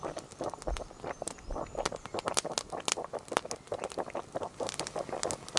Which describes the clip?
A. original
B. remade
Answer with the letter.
A